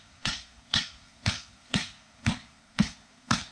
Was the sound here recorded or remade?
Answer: remade